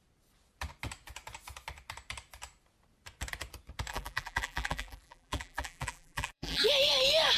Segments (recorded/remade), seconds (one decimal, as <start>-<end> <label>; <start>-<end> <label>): 0.0-3.9 recorded; 3.9-6.6 remade; 6.6-7.4 recorded